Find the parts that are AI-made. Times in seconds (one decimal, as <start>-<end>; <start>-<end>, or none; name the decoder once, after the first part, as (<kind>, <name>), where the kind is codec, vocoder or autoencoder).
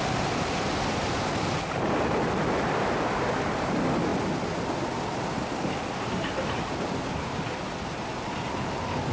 none